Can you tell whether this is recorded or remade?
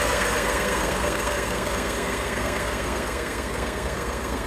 remade